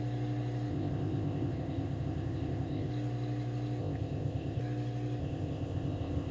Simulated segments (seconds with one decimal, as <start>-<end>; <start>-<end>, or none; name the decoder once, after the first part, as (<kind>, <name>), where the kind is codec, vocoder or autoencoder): 0.7-2.9 (codec, ZipCodec); 3.8-4.6; 5.2-6.3

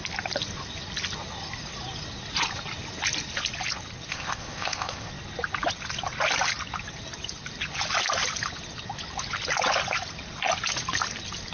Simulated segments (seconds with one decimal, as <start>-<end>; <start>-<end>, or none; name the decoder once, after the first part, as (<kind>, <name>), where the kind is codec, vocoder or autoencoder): 4.1-5.1 (codec, ZipCodec)

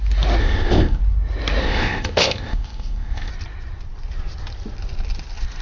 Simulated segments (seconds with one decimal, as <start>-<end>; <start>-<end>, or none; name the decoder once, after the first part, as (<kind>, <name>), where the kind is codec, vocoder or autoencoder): 0.4-1.0 (codec, ZipCodec); 1.6-3.3

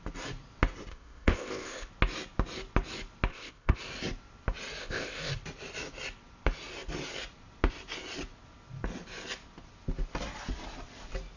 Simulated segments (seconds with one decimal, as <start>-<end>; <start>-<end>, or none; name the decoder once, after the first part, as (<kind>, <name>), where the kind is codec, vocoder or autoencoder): 0.9-1.9 (codec, ZipCodec); 3.3-3.8; 4.8-5.3

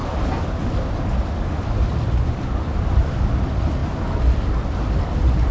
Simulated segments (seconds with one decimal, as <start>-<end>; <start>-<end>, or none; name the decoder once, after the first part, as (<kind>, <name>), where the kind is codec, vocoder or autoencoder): none

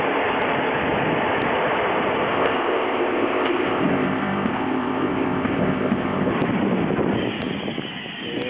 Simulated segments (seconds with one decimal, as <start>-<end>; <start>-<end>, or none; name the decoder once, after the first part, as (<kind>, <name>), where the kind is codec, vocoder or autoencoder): 2.3-6.3 (codec, ZipCodec)